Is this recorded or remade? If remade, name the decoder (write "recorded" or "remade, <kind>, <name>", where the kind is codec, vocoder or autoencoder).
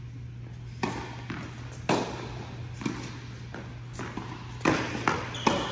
recorded